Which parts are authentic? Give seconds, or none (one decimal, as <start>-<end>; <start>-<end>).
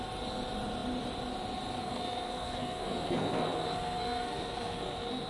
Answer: 0.0-1.8